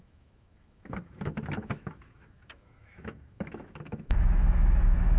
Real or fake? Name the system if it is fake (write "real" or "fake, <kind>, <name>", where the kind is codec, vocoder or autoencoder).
fake, autoencoder, DAC-VAE